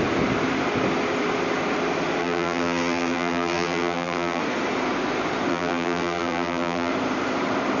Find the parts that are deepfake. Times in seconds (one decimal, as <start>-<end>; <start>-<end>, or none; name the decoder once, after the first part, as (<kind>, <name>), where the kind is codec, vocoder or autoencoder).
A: 2.2-4.4 (vocoder, BigVGAN v2); 5.5-6.9